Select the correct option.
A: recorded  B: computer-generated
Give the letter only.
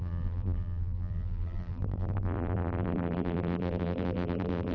B